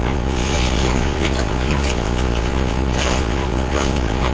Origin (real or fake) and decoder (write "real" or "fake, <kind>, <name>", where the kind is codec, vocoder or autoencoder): fake, vocoder, Vocos